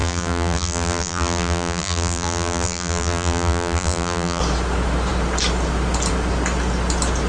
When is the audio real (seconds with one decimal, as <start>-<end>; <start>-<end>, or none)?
4.4-7.3